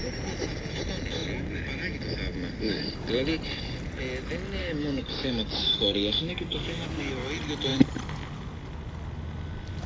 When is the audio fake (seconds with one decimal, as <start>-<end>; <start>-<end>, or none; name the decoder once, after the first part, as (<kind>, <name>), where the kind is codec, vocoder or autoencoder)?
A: 4.6-7.1 (codec, DAC)